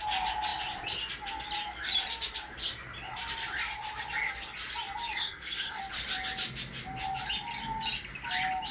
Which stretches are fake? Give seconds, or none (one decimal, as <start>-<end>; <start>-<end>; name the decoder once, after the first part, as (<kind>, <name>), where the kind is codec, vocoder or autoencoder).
5.2-5.8 (codec, SNAC)

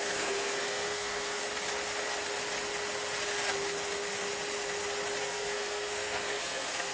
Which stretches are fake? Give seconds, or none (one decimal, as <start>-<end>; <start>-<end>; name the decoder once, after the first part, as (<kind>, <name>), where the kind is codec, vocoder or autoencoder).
0.0-1.4 (codec, SNAC); 5.2-6.9

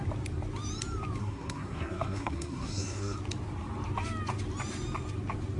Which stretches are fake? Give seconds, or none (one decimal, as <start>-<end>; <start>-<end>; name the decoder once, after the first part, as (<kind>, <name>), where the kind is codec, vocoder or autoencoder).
1.2-3.2 (codec, SNAC)

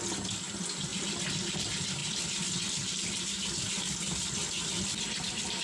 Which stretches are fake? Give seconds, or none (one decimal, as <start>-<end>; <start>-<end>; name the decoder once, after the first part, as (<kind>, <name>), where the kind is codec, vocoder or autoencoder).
none

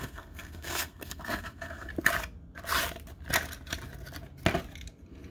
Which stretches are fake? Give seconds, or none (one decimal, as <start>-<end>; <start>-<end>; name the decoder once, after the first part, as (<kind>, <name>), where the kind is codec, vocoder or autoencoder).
0.0-1.9 (codec, SNAC)